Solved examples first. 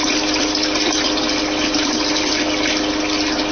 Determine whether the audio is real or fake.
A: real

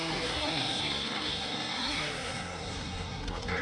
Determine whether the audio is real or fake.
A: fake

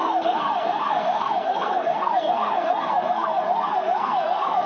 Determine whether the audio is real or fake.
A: fake